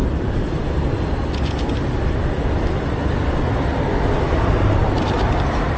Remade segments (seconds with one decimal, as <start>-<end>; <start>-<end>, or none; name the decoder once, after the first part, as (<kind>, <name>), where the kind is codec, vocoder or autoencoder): 4.8-5.8 (vocoder, BigVGAN v2)

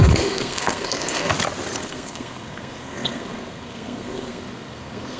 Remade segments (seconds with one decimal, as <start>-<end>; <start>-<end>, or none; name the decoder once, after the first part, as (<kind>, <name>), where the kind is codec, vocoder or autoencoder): 0.0-1.3 (codec, SNAC); 1.8-5.2